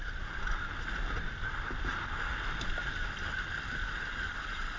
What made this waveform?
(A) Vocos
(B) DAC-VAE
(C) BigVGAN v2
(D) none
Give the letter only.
D